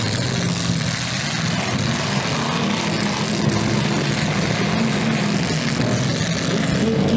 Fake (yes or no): no